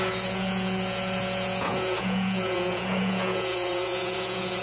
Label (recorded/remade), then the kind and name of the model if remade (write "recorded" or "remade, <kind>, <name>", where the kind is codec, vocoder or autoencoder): remade, vocoder, Vocos